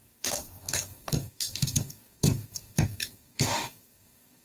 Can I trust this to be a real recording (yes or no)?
no